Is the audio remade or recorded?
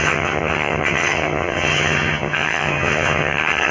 remade